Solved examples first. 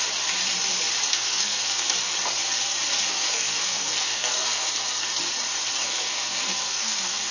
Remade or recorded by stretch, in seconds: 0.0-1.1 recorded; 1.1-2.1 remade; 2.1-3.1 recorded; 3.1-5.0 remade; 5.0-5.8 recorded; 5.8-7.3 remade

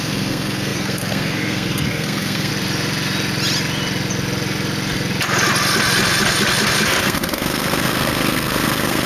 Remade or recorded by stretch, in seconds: 0.0-2.5 remade; 2.5-7.0 recorded; 7.0-9.1 remade

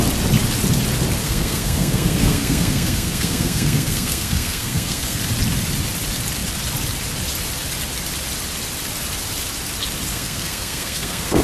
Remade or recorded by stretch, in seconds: 0.0-1.2 recorded; 1.2-5.2 remade; 5.2-10.1 recorded; 10.1-11.4 remade

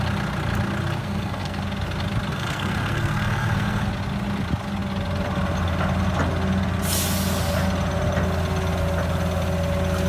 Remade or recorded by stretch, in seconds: 0.0-1.0 recorded; 1.0-1.6 remade; 1.6-2.3 recorded; 2.3-3.9 remade; 3.9-10.1 recorded

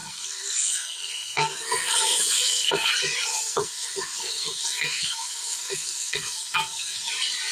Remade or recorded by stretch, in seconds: 0.0-2.9 remade; 2.9-3.3 recorded; 3.3-7.1 remade; 7.1-7.5 recorded

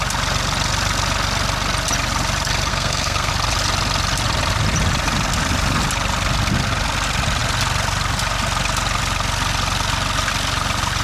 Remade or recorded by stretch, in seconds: 0.0-2.7 recorded; 2.7-3.3 remade; 3.3-11.0 recorded

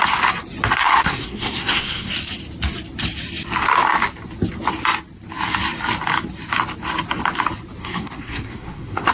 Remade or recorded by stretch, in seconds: 0.0-0.8 recorded; 0.8-2.1 remade; 2.1-7.8 recorded; 7.8-9.1 remade